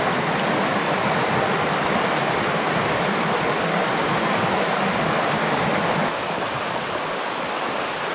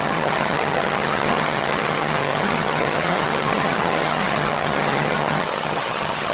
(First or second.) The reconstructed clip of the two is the second